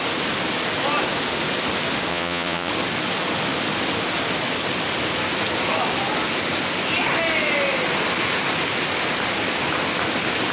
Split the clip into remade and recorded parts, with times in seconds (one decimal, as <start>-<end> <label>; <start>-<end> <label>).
0.0-2.1 recorded; 2.1-2.7 remade; 2.7-10.5 recorded